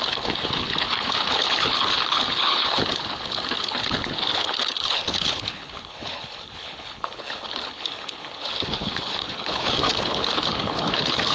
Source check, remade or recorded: remade